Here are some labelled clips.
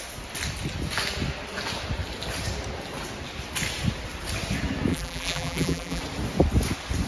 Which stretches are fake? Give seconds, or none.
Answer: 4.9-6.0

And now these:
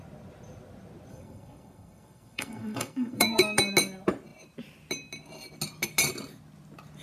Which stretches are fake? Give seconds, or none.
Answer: 1.1-3.6

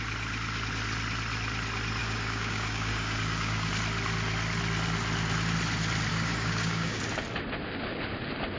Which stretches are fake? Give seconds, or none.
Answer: 2.0-3.7; 6.1-7.0

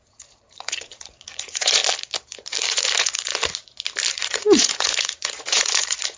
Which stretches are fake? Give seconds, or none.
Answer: 0.0-1.8; 2.6-3.3; 4.1-6.2

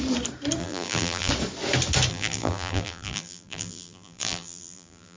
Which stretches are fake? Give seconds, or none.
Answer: 0.6-1.3; 2.1-5.2